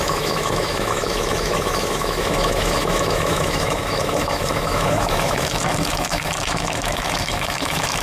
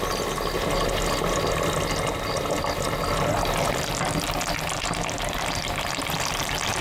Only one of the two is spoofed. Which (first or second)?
first